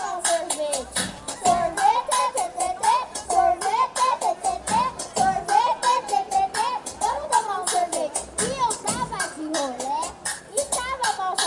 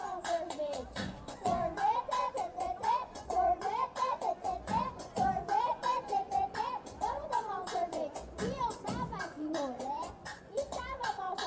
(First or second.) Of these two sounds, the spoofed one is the second